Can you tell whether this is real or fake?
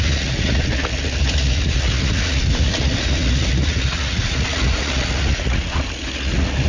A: fake